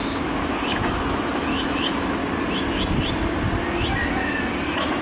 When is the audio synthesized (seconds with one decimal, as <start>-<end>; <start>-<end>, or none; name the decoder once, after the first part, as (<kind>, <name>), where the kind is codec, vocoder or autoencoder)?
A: 0.0-2.2 (autoencoder, DAC-VAE)